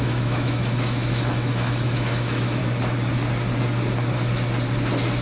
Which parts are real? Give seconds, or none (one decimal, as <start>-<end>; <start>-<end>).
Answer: 2.6-5.2